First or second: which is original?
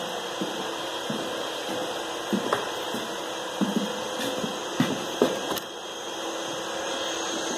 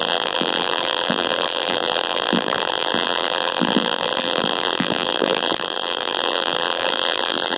first